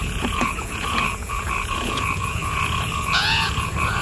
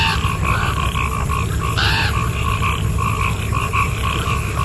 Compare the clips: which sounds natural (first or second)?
second